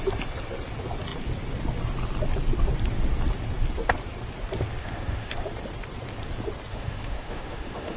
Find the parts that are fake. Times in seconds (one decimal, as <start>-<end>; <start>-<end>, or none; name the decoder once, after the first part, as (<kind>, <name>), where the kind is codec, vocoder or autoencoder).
4.8-5.3 (autoencoder, DAC-VAE); 6.7-8.0